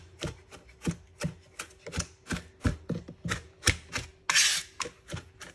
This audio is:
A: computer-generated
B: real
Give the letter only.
B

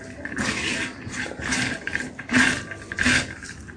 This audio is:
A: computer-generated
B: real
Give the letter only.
B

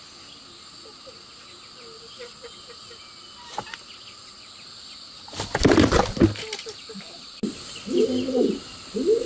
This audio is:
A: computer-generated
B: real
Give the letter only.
B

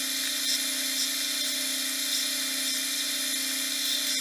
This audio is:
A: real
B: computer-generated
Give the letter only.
A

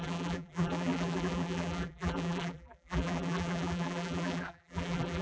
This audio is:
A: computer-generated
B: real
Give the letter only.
A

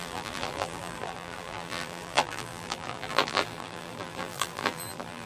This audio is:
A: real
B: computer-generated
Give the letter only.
B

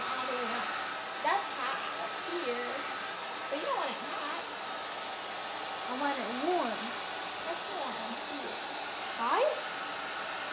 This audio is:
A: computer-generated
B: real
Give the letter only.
B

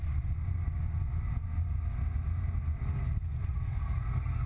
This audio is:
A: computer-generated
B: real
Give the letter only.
B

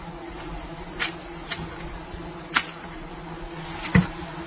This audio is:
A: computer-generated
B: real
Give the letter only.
B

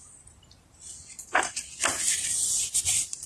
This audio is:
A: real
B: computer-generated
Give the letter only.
A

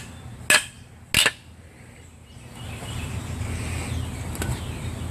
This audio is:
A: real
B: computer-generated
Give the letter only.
A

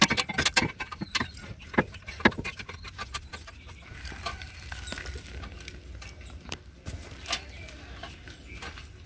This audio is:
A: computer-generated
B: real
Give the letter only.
B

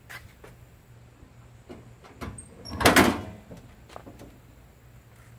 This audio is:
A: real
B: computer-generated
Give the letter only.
A